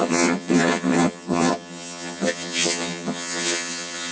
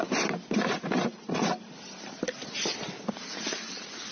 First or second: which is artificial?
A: first